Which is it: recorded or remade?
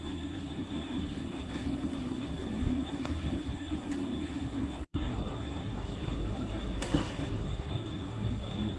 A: remade